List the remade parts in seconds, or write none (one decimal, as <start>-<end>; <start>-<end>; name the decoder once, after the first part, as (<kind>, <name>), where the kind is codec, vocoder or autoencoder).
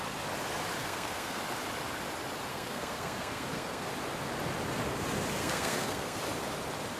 0.8-1.4 (codec, SNAC); 2.5-3.9; 5.4-6.2